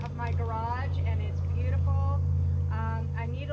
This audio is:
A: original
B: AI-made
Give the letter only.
A